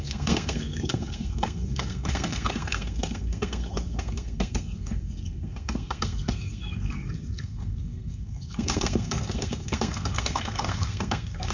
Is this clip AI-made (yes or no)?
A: yes